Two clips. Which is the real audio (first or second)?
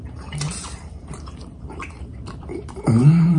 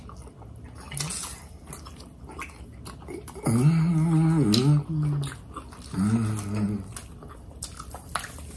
second